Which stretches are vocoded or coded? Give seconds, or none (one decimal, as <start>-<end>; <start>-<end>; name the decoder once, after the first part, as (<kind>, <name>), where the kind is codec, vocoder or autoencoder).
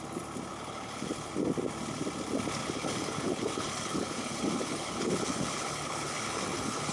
0.5-1.3 (codec, HILCodec); 2.6-6.9